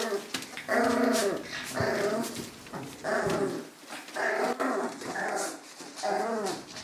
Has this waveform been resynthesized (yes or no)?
no